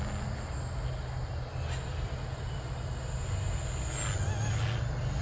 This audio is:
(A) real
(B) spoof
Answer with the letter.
A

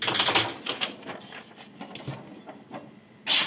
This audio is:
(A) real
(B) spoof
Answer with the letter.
A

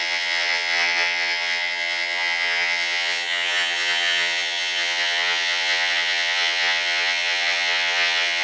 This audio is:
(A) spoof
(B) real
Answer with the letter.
A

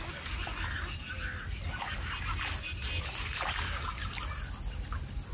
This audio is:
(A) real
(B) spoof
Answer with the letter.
A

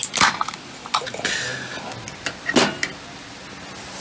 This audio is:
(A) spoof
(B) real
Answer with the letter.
B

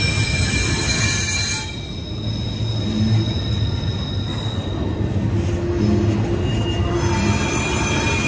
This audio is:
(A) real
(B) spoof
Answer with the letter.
A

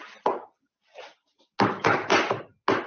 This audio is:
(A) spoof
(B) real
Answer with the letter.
B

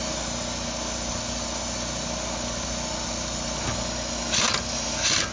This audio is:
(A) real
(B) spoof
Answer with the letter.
A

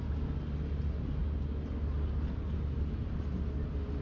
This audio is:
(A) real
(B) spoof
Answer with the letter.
A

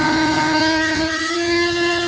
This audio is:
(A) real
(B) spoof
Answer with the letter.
B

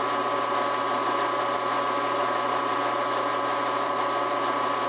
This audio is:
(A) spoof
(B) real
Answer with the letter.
B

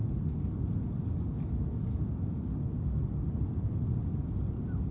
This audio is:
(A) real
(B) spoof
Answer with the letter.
A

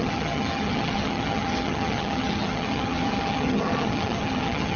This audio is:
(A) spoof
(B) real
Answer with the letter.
A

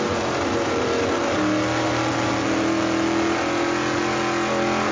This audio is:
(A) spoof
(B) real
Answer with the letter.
B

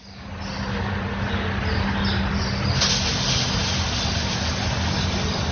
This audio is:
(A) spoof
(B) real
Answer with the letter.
B